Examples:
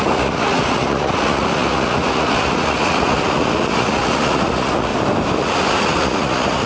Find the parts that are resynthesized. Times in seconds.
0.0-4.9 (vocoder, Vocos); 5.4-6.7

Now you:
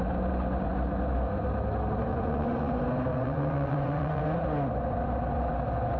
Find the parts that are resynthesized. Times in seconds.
2.1-2.7 (vocoder, Vocos); 3.1-4.2